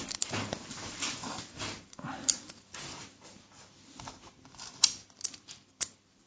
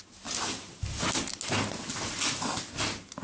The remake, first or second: first